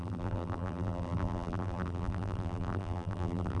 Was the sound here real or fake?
fake